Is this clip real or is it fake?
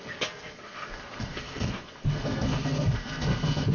fake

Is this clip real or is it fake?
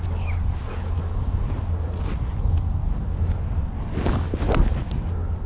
real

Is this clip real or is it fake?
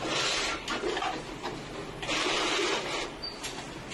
real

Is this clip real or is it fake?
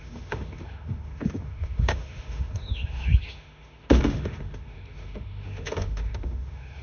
fake